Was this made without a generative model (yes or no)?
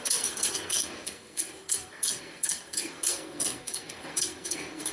no